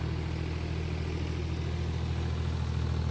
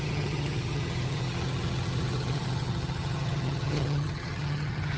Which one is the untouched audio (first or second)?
first